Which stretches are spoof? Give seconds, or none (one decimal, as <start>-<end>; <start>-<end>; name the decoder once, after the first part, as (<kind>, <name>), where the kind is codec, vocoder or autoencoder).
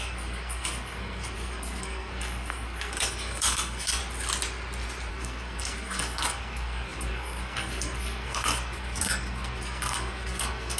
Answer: 0.0-4.0 (codec, SNAC); 5.1-10.8